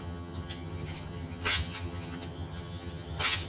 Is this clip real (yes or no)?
no